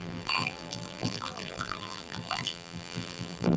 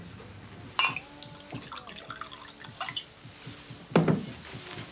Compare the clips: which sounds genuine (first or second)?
second